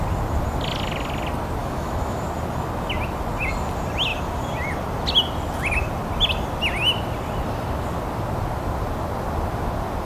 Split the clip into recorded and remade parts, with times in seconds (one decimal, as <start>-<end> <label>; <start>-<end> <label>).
0.0-1.6 recorded; 1.6-2.2 remade; 2.2-10.0 recorded